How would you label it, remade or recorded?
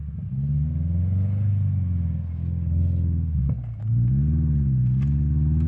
recorded